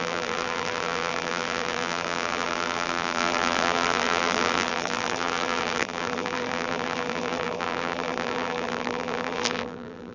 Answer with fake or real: fake